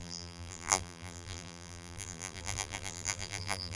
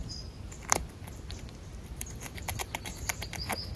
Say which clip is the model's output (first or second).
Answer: first